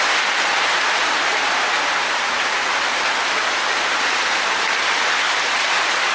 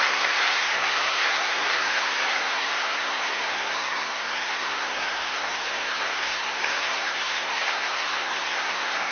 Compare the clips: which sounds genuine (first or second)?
first